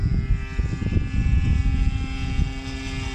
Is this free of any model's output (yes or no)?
yes